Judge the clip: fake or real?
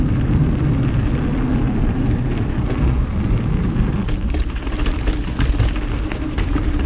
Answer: real